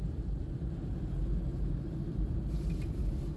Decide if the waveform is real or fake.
fake